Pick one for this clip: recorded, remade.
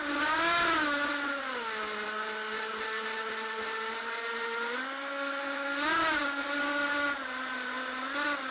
recorded